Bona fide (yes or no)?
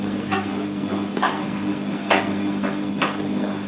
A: no